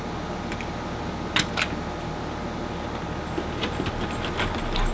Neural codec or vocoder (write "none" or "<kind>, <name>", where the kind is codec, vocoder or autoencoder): none